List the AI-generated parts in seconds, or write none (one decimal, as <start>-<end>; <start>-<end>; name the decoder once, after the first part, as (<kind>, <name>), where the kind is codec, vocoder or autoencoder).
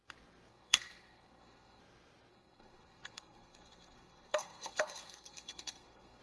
0.5-1.8 (codec, SNAC); 2.3-6.2